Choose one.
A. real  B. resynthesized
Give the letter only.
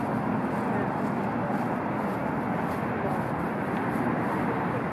A